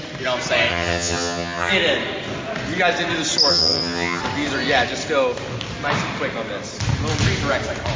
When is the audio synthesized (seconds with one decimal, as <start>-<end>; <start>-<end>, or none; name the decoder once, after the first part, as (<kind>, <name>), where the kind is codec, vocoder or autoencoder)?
0.7-1.7 (vocoder, HiFi-GAN); 3.5-4.2

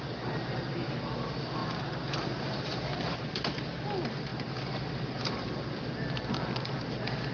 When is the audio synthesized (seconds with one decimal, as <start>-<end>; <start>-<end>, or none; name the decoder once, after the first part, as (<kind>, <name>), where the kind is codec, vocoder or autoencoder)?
none

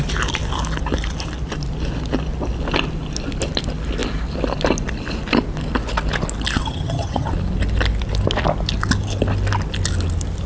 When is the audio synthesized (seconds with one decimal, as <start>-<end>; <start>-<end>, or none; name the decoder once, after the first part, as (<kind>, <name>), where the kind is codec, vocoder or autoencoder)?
6.6-7.3 (vocoder, HiFi-GAN)

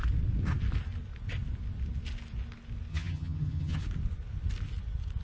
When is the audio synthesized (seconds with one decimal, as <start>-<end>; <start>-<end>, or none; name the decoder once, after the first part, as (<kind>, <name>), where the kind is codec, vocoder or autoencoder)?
2.9-3.8 (vocoder, HiFi-GAN)

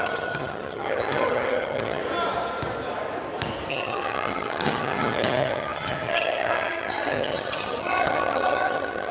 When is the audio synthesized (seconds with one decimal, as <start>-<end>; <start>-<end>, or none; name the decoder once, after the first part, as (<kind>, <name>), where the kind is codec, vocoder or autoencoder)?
0.0-2.0 (vocoder, HiFi-GAN); 3.7-9.1

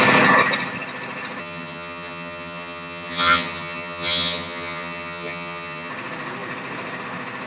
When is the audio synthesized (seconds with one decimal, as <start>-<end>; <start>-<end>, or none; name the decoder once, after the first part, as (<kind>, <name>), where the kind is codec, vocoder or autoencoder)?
1.4-5.9 (vocoder, HiFi-GAN)

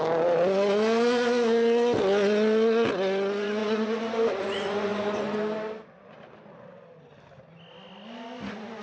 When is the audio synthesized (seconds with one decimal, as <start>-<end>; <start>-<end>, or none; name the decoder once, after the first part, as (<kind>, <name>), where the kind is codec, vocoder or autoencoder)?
none